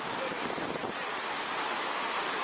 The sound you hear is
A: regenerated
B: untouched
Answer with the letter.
B